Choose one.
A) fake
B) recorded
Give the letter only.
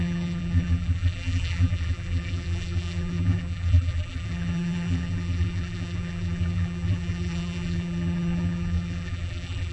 A